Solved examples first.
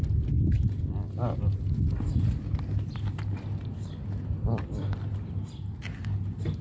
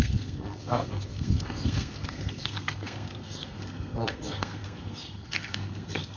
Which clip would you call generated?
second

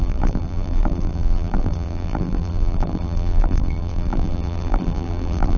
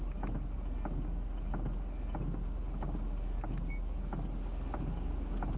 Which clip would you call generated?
first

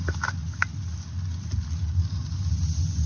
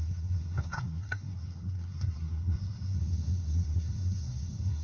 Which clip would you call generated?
second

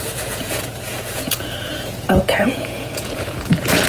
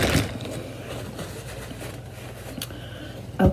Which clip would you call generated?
first